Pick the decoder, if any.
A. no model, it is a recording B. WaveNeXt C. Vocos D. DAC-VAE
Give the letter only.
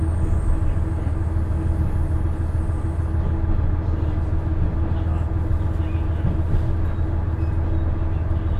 A